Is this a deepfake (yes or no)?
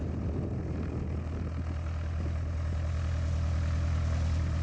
no